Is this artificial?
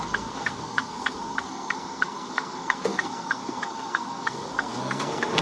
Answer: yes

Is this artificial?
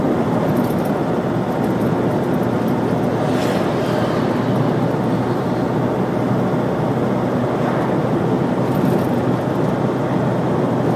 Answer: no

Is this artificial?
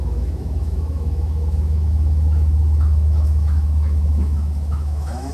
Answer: yes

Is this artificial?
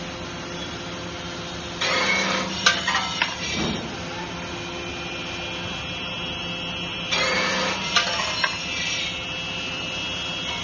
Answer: no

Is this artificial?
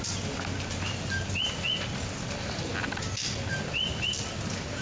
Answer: no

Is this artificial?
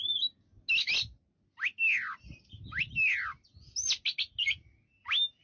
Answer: no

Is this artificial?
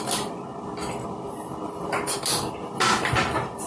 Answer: no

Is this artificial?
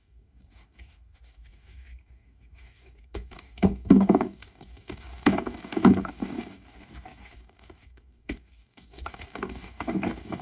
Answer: yes